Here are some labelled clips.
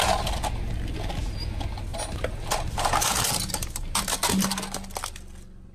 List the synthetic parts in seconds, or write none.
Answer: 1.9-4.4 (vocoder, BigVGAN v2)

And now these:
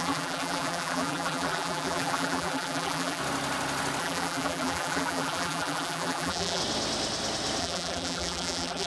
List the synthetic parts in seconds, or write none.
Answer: 0.0-3.2 (vocoder, BigVGAN v2); 4.0-6.6; 7.6-8.9

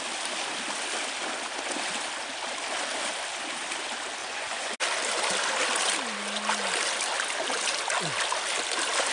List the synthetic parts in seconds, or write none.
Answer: 4.2-4.7 (vocoder, Vocos)

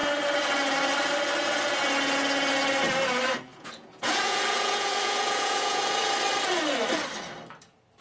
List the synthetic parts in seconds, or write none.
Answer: 3.5-6.1 (vocoder, Vocos)